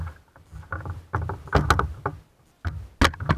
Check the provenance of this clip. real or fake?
real